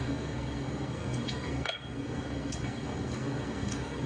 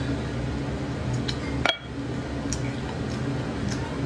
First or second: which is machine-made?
first